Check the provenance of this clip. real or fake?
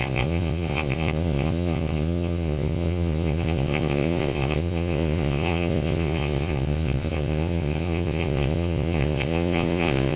fake